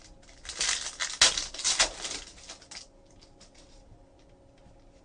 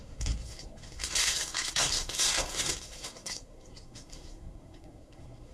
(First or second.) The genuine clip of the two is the first